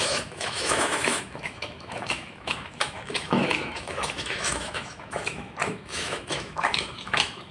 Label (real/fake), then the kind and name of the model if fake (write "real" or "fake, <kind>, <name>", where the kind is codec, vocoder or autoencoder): fake, autoencoder, DAC-VAE